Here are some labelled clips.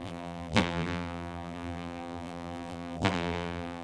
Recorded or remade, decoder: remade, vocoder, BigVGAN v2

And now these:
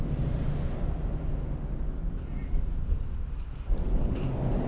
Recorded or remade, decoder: recorded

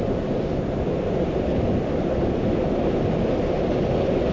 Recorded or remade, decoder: recorded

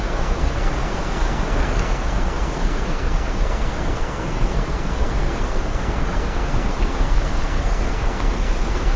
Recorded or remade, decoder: remade, codec, SNAC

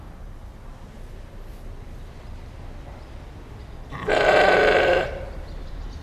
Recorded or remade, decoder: recorded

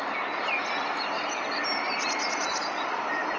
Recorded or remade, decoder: recorded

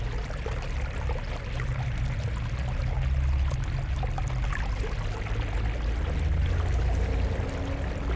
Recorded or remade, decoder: recorded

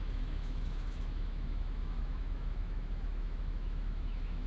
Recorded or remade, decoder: remade, autoencoder, DAC-VAE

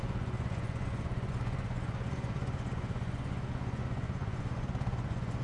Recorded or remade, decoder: remade, vocoder, Vocos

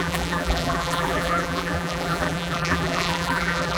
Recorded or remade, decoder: remade, vocoder, BigVGAN v2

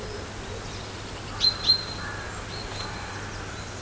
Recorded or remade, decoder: recorded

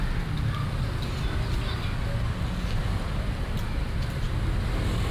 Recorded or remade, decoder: recorded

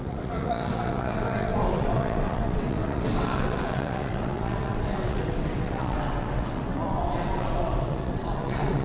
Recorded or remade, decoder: remade, vocoder, WaveNeXt